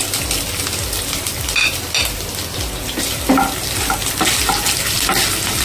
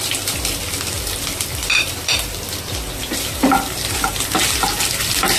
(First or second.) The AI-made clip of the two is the second